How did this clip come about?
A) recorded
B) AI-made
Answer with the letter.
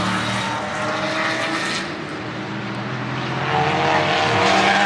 A